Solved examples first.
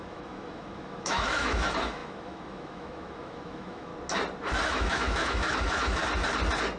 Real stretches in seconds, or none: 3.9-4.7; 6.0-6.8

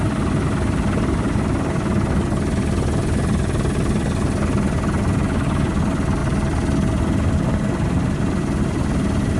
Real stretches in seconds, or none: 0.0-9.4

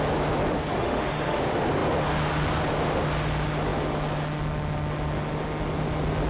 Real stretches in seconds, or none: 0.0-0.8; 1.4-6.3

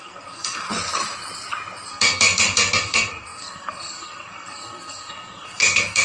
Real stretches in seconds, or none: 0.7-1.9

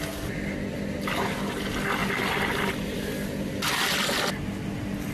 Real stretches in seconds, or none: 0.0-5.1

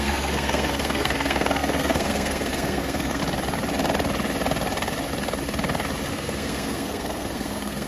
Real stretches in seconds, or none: 3.2-6.1

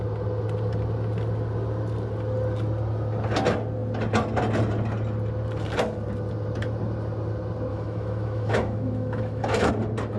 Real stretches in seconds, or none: 0.0-7.7; 9.7-10.2